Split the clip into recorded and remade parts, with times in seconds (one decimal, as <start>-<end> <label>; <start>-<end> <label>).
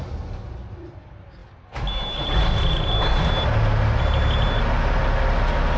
0.0-5.8 recorded